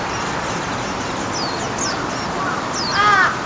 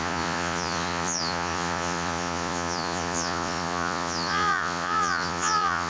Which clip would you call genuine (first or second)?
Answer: first